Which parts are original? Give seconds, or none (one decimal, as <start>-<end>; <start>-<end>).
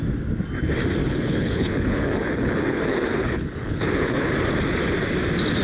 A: 0.0-1.0; 4.3-5.6